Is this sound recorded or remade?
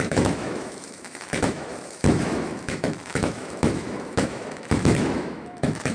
remade